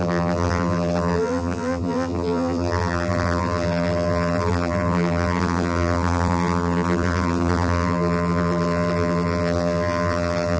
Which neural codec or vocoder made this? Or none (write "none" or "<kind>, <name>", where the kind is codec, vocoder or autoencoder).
vocoder, BigVGAN v2